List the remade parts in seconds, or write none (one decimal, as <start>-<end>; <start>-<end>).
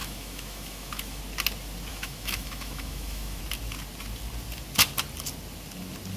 0.0-1.2; 1.9-3.4